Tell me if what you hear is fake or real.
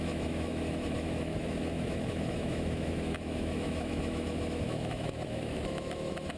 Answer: fake